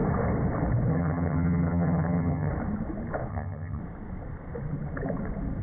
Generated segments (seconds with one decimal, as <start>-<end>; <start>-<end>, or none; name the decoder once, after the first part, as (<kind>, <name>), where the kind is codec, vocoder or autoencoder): 0.9-2.5 (vocoder, HiFi-GAN); 3.3-3.8